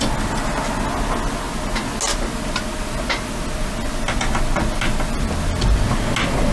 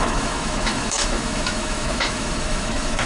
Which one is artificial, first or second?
second